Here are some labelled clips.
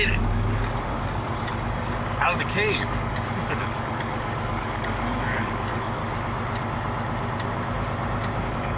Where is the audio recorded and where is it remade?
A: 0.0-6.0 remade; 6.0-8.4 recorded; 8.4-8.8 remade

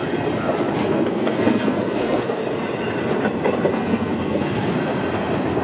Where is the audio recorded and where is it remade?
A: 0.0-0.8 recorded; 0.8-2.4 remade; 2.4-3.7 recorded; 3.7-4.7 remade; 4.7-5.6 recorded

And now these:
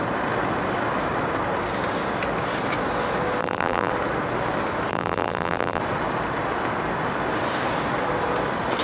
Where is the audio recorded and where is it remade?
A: 0.0-3.4 recorded; 3.4-3.9 remade; 3.9-4.9 recorded; 4.9-5.8 remade; 5.8-8.8 recorded

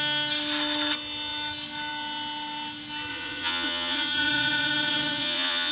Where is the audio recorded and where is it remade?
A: 0.0-3.1 recorded; 3.1-5.7 remade